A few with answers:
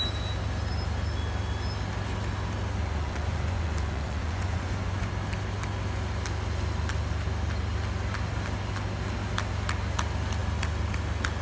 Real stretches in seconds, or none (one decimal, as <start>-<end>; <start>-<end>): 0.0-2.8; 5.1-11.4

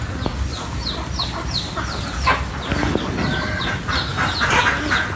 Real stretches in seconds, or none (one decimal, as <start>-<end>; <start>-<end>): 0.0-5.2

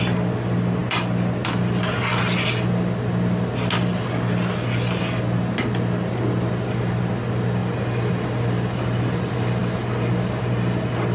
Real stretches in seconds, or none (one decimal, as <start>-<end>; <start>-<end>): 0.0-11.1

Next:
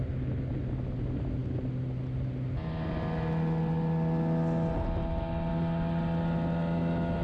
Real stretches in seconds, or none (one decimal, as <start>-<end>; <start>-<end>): 0.0-7.2